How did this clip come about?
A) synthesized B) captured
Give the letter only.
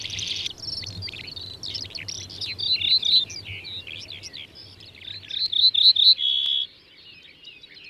B